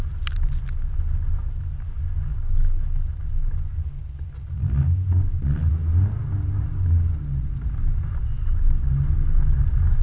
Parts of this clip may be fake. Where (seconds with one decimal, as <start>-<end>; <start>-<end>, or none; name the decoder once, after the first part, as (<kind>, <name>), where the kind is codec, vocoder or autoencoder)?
7.4-8.0 (vocoder, BigVGAN v2)